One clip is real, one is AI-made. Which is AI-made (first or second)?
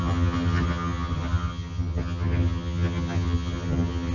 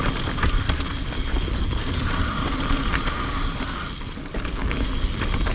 first